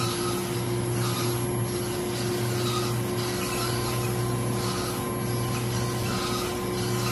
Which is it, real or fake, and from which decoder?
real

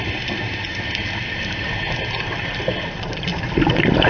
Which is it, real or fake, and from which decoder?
real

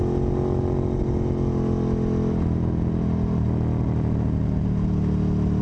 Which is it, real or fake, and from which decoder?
real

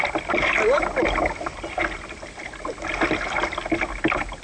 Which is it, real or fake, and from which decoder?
real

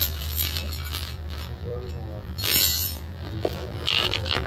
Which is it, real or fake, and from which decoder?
fake, vocoder, BigVGAN v2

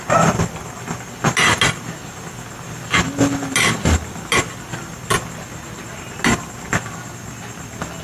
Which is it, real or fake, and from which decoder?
real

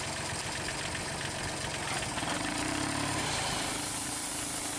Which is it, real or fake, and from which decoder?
real